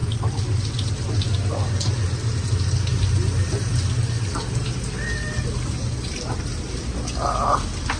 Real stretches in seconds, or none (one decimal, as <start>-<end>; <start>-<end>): 0.0-8.0